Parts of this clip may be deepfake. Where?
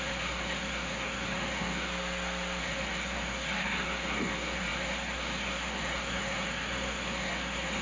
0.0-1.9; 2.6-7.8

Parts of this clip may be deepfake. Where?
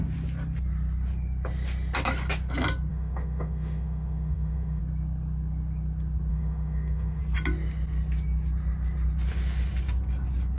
2.9-4.8; 6.3-7.2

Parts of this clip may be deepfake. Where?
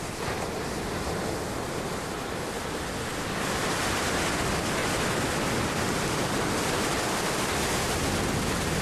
4.8-7.5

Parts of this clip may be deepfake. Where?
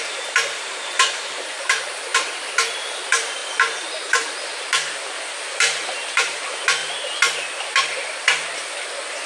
0.0-2.1; 2.8-3.4; 4.1-6.8; 7.7-8.6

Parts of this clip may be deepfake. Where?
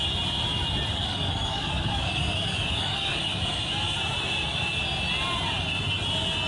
0.9-3.6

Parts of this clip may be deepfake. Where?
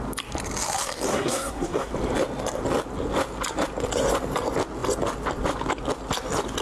1.1-1.9